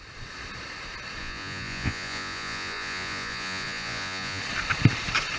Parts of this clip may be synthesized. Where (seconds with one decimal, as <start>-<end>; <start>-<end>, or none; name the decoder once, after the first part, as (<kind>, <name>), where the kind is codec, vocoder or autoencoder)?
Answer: 1.2-4.4 (vocoder, Vocos)